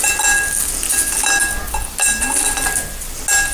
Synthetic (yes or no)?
no